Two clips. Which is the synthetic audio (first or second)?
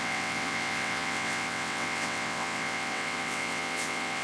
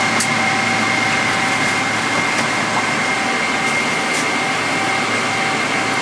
first